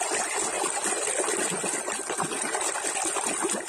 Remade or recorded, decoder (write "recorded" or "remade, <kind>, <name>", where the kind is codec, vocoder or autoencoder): recorded